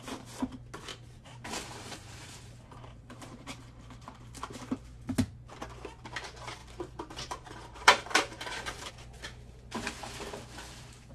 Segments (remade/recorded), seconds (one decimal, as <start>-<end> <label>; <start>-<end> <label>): 0.0-0.9 recorded; 0.9-4.2 remade; 4.2-6.6 recorded; 6.6-8.9 remade; 8.9-11.1 recorded